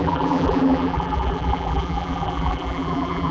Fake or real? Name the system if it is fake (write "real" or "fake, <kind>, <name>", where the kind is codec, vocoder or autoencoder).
fake, vocoder, BigVGAN v2